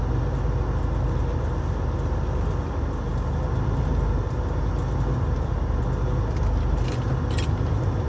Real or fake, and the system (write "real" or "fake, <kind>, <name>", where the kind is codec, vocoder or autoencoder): real